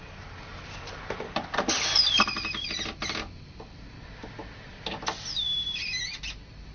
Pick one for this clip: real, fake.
real